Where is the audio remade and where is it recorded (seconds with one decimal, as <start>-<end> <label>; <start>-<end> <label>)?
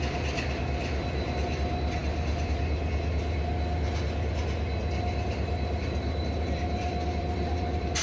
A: 0.0-2.0 recorded; 2.0-2.6 remade; 2.6-4.8 recorded; 4.8-8.0 remade